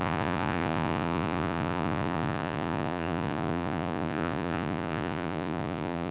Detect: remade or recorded remade